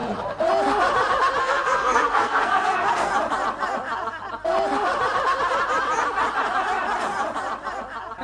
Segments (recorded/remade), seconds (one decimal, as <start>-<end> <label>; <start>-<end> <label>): 0.0-1.4 recorded; 1.4-3.1 remade; 3.1-8.2 recorded